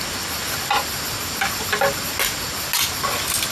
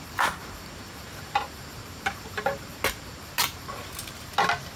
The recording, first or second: first